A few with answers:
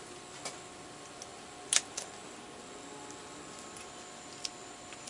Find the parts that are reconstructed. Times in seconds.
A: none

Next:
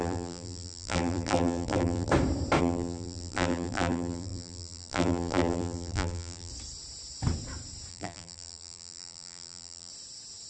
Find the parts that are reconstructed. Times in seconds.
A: 0.0-2.1 (vocoder, BigVGAN v2); 2.6-6.5; 7.9-9.9

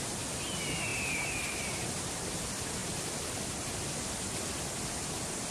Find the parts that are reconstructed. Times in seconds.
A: none